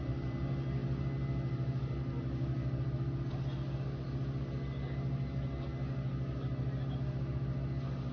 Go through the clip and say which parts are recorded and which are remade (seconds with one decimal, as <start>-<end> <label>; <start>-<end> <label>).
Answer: 0.0-8.1 recorded